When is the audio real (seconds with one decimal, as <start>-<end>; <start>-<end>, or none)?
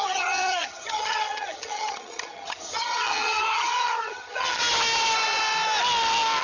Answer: 4.6-6.4